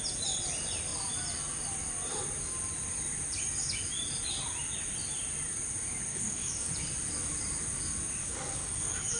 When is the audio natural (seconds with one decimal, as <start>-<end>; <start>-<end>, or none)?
0.0-6.1; 6.7-8.2